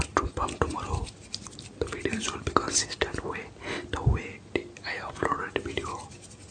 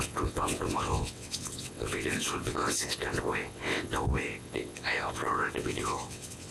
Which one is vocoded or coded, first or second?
second